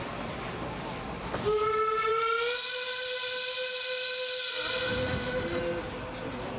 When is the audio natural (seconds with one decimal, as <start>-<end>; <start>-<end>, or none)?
0.0-5.0; 5.6-6.6